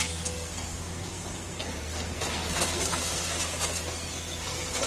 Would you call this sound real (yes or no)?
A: no